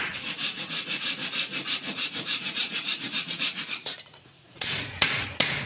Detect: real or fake fake